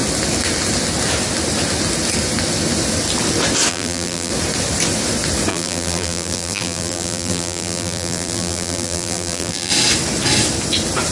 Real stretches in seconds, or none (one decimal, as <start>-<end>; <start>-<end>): 0.0-3.7; 4.3-5.5; 9.7-11.1